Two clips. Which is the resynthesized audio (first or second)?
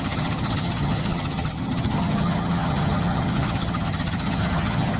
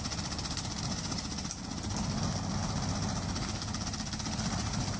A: first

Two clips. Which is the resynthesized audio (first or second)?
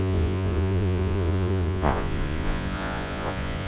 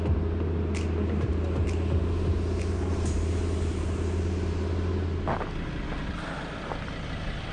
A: first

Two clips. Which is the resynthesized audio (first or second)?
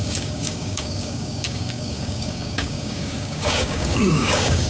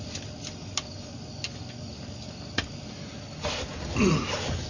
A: first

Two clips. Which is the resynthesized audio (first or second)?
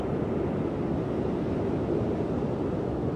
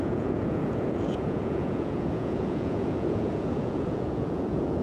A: second